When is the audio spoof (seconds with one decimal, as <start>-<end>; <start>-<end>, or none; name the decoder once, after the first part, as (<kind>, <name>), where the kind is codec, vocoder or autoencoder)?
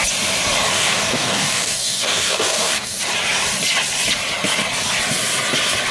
0.7-3.0 (codec, DAC)